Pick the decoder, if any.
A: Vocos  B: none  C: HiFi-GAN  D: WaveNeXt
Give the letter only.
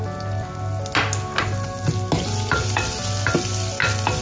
B